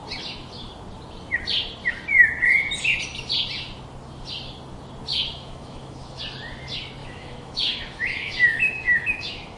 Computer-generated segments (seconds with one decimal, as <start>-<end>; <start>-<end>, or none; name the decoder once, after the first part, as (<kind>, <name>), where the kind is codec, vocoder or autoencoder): 5.1-6.2 (autoencoder, DAC-VAE); 7.0-9.6